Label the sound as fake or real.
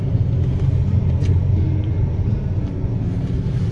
fake